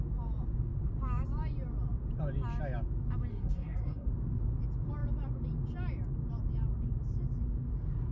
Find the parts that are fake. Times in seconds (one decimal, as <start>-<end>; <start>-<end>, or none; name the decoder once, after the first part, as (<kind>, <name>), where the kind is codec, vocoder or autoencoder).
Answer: 3.3-4.1 (codec, SNAC)

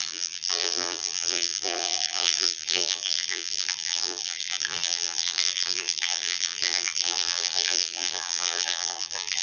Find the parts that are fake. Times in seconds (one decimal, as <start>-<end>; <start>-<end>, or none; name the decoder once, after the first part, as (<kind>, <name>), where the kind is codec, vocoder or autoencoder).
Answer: 0.0-9.4 (vocoder, BigVGAN v2)

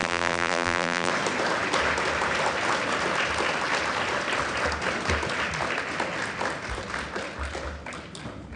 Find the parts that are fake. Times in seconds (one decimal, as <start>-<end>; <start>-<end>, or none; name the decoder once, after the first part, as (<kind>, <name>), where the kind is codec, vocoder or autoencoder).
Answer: 0.0-1.1 (vocoder, BigVGAN v2)

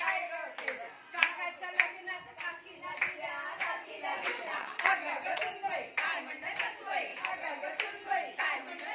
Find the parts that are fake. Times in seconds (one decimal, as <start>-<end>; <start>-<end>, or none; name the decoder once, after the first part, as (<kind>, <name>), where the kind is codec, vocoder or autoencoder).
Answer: 4.1-5.4 (vocoder, WaveNeXt)

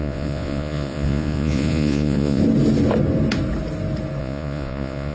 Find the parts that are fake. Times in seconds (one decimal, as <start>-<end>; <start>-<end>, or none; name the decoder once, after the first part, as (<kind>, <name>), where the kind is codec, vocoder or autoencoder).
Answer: 0.0-2.4 (vocoder, Vocos); 4.2-5.1

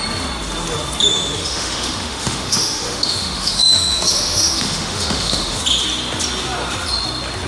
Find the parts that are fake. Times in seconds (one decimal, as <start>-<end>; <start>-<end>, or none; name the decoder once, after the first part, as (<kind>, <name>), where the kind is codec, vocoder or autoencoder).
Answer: 1.1-5.6 (autoencoder, DAC-VAE)